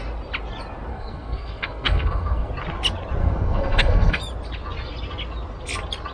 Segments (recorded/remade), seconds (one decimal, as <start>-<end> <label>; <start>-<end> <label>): 0.0-0.9 recorded; 0.9-2.5 remade; 2.5-3.2 recorded; 3.2-4.2 remade; 4.2-6.1 recorded